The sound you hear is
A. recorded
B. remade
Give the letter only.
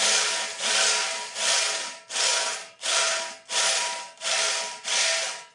A